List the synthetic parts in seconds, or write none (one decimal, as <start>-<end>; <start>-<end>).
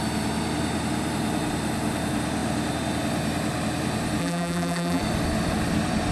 4.2-5.0